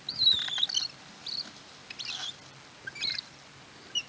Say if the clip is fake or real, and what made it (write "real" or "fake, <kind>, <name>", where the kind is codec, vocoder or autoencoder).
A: real